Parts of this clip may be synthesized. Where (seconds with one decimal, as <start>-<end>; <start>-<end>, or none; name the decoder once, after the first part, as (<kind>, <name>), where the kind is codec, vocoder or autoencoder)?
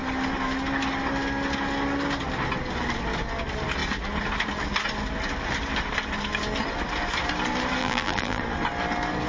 7.8-8.4 (vocoder, BigVGAN v2)